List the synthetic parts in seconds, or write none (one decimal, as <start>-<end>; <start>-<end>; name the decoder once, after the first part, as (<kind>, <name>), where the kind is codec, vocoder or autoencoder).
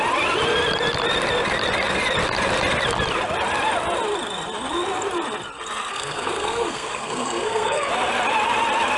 5.9-7.9 (codec, SNAC)